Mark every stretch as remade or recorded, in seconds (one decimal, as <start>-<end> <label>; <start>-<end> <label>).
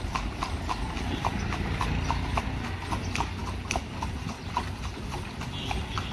0.0-6.1 recorded